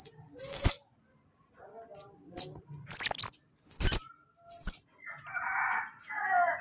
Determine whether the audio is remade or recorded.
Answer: recorded